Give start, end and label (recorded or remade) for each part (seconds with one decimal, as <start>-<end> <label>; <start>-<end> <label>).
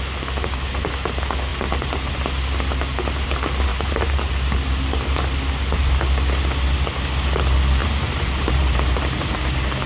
0.0-3.7 recorded; 3.7-4.3 remade; 4.3-7.8 recorded; 7.8-9.4 remade; 9.4-9.9 recorded